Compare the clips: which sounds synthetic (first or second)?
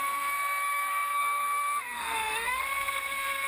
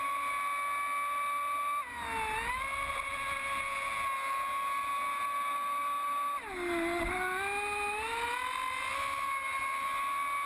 first